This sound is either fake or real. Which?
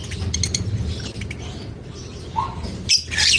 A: real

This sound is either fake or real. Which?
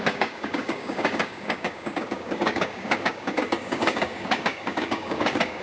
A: fake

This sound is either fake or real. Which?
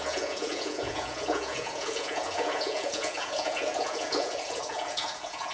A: fake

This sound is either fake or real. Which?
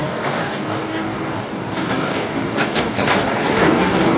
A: fake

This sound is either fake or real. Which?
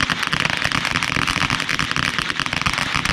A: real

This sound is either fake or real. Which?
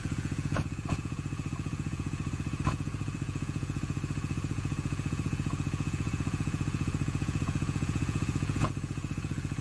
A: fake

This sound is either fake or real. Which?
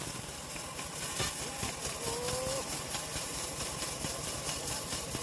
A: real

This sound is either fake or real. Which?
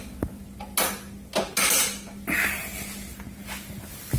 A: real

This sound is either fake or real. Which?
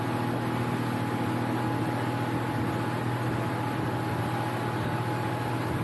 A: real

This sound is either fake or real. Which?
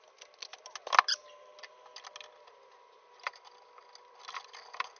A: real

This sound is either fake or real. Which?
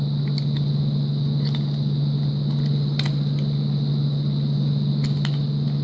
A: real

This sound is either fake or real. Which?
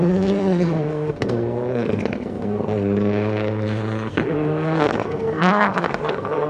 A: fake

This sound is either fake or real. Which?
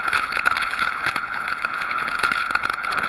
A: fake